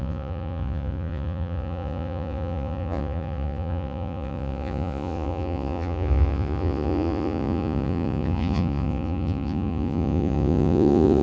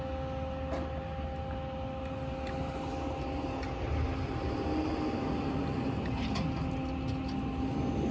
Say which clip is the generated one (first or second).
first